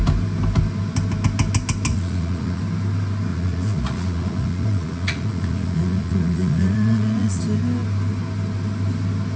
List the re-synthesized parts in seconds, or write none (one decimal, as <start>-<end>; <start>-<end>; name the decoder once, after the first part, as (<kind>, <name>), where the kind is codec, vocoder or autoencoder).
1.9-2.6 (vocoder, Vocos); 3.3-7.4